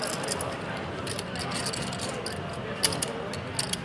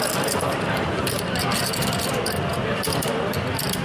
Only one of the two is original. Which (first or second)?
first